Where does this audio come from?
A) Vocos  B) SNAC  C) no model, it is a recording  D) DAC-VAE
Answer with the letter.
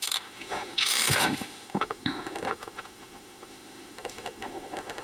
D